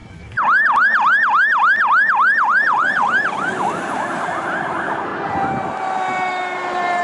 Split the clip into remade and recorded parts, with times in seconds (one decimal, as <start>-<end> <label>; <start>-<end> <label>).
0.0-5.1 remade; 5.1-6.3 recorded; 6.3-7.0 remade